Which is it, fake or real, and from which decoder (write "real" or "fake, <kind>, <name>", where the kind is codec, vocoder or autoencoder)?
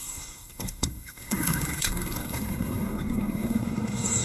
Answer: fake, codec, SNAC